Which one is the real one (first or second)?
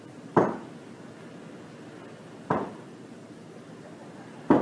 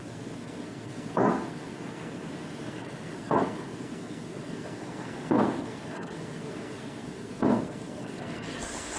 first